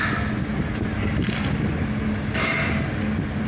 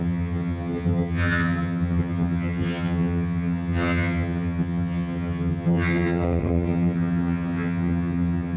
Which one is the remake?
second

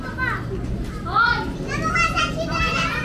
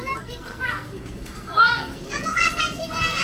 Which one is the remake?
second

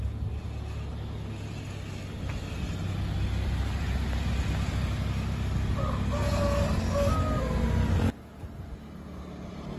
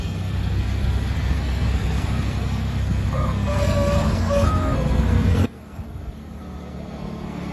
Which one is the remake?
second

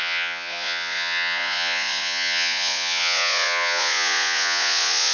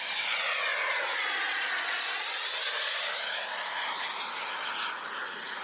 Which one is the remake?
first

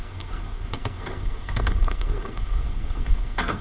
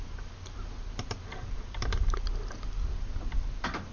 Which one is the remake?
first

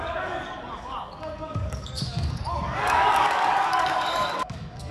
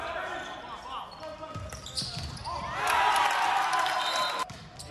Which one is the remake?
first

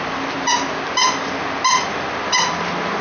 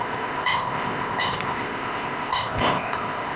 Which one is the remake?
second